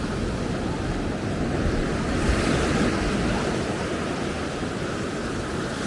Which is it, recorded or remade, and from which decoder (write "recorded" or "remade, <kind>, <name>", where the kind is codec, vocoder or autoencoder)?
recorded